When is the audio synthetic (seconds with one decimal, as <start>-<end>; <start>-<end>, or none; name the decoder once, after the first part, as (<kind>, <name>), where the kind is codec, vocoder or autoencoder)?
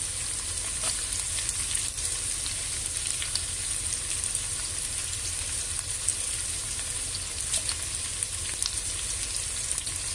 none